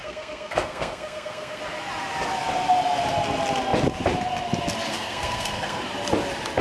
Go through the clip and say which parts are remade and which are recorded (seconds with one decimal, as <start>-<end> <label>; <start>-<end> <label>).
0.0-1.6 remade; 1.6-4.9 recorded; 4.9-5.8 remade; 5.8-6.6 recorded